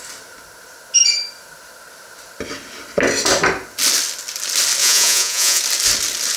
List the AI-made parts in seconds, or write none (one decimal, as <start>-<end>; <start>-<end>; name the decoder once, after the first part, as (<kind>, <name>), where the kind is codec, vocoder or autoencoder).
4.8-5.6 (vocoder, Vocos)